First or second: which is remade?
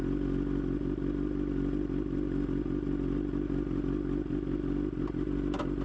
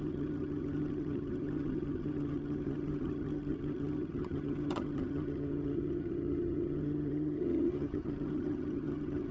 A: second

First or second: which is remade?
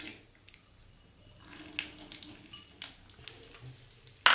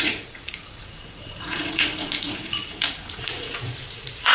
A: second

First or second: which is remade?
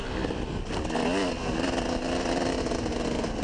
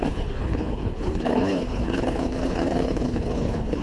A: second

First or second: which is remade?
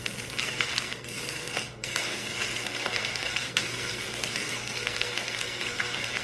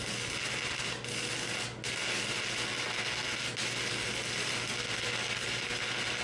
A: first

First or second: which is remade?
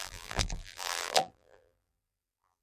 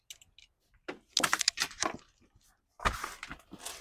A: first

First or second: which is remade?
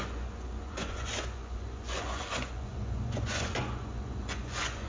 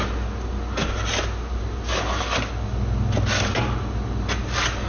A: first